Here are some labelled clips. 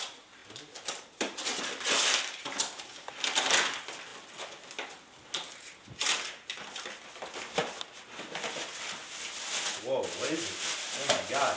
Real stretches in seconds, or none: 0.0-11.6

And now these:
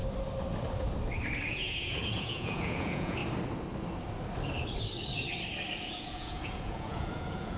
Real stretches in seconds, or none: 0.0-1.5; 3.2-5.9

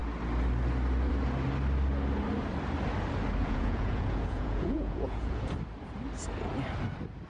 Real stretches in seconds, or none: 0.0-3.4; 5.5-7.3

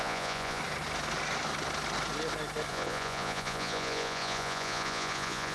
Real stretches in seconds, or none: 0.6-2.7

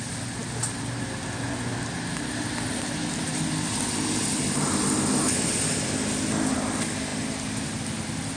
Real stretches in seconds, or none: 0.0-8.4